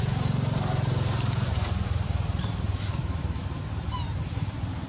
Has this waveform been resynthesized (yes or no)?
yes